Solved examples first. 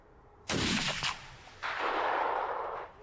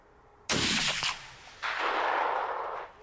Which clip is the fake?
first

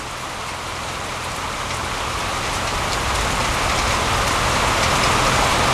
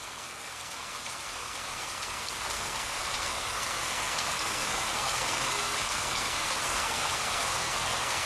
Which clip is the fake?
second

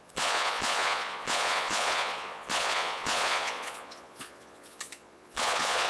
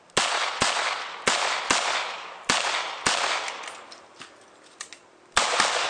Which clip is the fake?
first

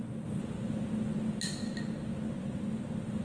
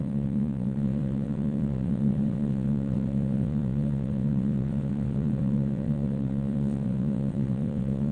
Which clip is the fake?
second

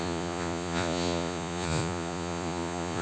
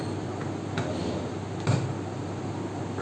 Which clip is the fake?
first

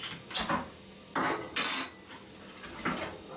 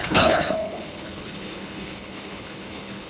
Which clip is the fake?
second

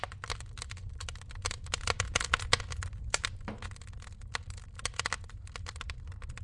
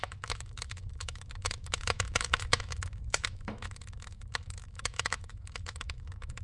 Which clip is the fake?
second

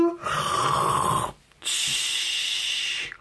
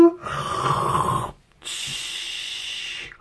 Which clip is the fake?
second